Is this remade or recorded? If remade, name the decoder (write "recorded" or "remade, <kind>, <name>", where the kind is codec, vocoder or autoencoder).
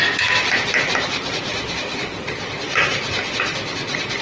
recorded